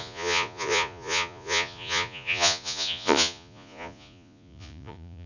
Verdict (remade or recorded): remade